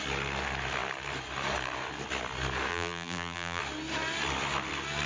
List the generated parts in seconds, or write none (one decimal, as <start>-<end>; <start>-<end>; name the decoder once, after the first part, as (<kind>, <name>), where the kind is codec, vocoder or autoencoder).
2.7-3.6 (vocoder, BigVGAN v2)